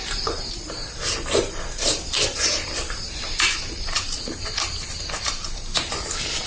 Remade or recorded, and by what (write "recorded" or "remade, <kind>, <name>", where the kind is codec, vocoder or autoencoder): remade, vocoder, BigVGAN v2